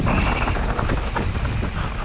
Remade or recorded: recorded